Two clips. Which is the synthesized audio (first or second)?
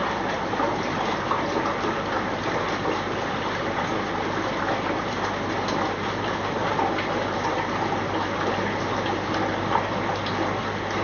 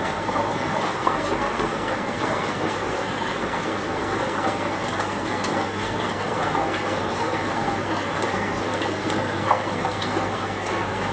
second